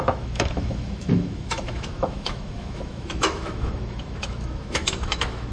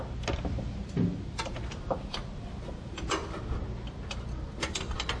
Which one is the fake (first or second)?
first